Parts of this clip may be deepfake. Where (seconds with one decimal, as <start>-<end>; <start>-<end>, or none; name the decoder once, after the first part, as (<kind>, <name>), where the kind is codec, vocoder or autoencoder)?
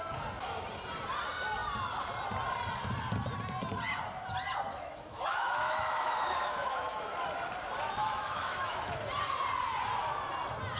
4.7-7.0 (autoencoder, DAC-VAE); 8.0-9.0